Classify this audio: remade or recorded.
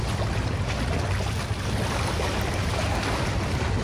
recorded